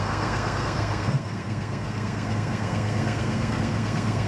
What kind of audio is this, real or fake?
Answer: fake